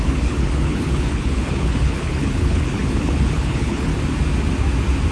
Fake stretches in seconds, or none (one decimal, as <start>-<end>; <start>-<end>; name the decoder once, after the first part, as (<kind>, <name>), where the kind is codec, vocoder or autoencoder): 0.0-3.9 (codec, HILCodec)